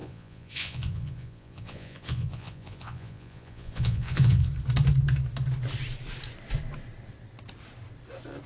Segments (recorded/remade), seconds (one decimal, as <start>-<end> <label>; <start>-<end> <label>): 0.0-4.5 remade; 4.5-8.5 recorded